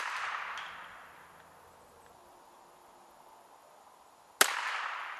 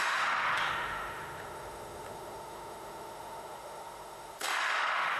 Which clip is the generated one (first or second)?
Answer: second